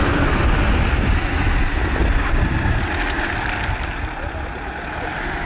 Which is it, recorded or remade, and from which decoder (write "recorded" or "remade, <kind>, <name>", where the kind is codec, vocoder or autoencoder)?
recorded